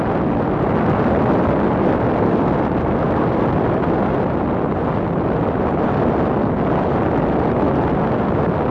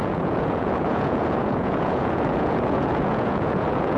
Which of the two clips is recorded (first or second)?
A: first